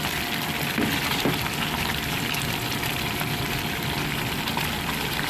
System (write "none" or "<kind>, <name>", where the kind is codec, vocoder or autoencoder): vocoder, BigVGAN v2